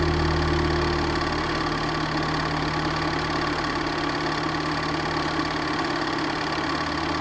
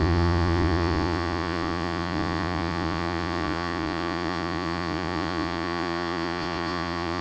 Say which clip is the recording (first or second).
first